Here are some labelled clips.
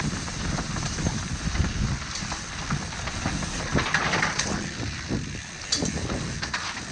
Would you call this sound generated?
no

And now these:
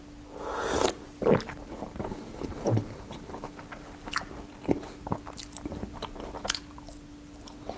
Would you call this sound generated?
no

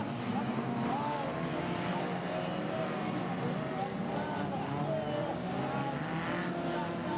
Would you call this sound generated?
no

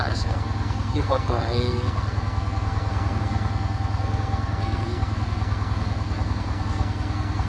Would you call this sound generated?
yes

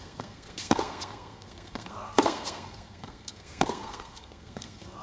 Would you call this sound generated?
yes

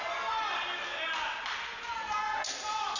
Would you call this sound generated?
no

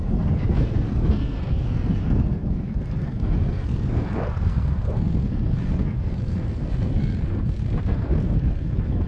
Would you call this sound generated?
yes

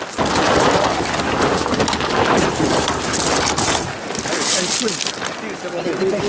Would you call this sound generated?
no